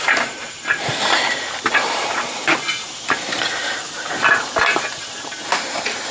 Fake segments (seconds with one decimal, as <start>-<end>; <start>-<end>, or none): 0.0-2.2; 5.1-6.1